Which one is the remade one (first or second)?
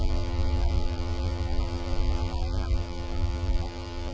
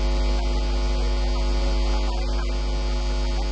first